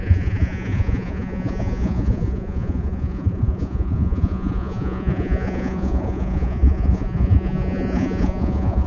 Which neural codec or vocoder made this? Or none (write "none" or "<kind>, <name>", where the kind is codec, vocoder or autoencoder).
vocoder, Vocos